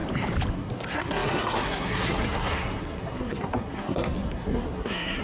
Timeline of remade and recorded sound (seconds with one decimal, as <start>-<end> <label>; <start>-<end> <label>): 0.0-0.5 recorded; 0.5-5.2 remade